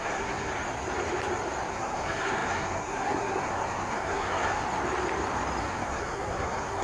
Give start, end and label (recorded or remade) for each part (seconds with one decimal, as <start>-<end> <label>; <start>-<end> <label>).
0.0-0.5 remade; 0.5-1.7 recorded; 1.7-4.6 remade; 4.6-5.6 recorded; 5.6-6.8 remade